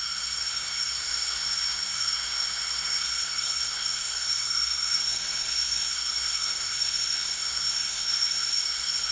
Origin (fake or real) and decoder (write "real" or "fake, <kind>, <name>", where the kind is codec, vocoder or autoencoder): fake, codec, SNAC